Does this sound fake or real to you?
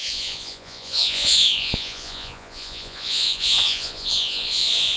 fake